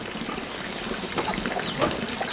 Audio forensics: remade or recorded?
recorded